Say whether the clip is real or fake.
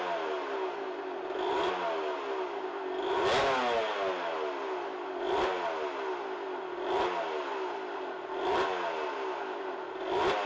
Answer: real